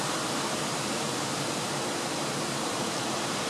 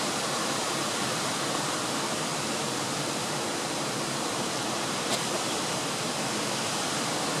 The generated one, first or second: second